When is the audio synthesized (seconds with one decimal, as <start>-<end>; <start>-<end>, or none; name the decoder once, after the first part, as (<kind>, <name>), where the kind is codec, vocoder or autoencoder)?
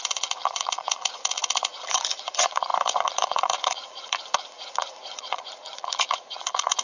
0.0-6.8 (vocoder, Vocos)